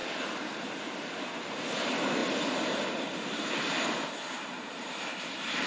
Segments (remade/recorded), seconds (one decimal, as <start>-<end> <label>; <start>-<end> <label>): 0.0-2.2 remade; 2.2-4.4 recorded; 4.4-5.7 remade